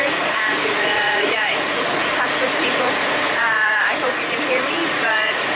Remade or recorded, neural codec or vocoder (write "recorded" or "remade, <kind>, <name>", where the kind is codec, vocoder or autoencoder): remade, vocoder, Vocos